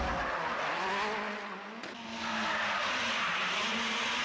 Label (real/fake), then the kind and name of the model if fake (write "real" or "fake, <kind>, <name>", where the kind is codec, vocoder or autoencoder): real